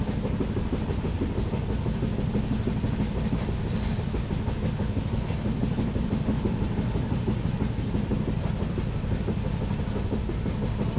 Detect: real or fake real